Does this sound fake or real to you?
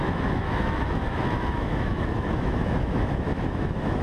fake